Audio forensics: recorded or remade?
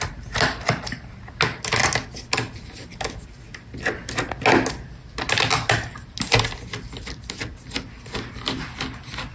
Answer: recorded